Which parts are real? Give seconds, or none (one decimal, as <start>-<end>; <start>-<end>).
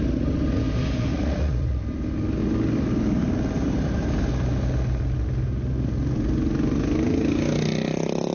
0.0-1.1; 1.8-8.3